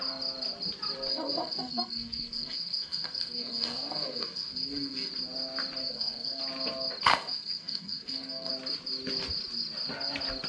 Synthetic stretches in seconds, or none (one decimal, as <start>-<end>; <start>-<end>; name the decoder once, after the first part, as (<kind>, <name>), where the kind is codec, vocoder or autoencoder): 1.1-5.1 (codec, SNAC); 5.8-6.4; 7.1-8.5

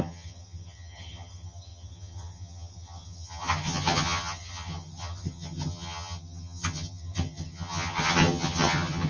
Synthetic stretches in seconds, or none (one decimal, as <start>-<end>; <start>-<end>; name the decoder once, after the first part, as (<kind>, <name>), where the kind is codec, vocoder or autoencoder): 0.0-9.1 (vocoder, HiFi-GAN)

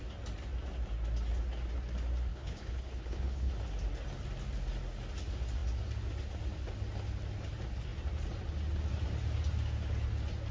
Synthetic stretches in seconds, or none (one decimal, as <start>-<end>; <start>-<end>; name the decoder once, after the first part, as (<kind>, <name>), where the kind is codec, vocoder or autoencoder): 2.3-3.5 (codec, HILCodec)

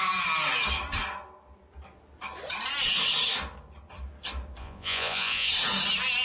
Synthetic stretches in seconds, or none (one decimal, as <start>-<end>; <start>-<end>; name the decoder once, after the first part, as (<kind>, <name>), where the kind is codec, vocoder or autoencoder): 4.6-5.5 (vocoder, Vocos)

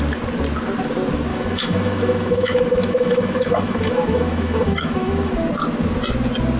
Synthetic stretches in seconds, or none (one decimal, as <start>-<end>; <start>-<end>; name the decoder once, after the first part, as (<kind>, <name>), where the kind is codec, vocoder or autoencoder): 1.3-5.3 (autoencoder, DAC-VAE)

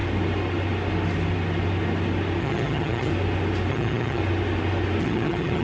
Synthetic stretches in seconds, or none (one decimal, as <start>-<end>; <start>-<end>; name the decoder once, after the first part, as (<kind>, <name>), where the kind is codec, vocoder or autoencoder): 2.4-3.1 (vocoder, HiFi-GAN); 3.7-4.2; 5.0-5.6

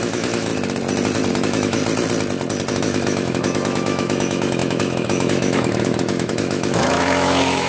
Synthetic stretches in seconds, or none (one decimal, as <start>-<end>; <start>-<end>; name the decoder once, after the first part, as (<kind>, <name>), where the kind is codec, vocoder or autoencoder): 0.0-0.5 (autoencoder, DAC-VAE); 1.3-1.8; 2.7-7.7